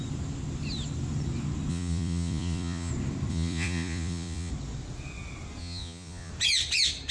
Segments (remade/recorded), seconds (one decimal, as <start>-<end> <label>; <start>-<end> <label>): 0.0-1.7 recorded; 1.7-2.9 remade; 2.9-3.3 recorded; 3.3-4.5 remade; 4.5-5.6 recorded; 5.6-6.3 remade; 6.3-7.1 recorded